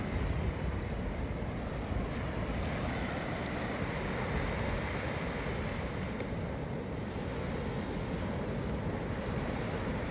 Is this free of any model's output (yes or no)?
yes